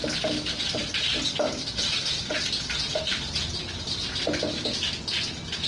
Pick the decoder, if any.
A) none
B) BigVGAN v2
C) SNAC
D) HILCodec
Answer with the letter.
A